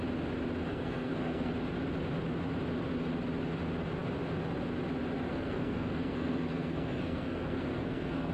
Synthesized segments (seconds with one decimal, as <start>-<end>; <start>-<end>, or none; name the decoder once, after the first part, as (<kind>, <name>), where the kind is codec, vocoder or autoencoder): 0.7-1.5 (codec, SNAC); 5.3-8.3